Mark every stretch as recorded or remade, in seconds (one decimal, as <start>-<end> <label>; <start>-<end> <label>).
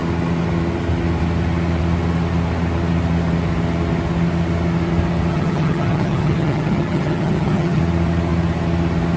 0.0-5.3 recorded; 5.3-7.8 remade; 7.8-9.2 recorded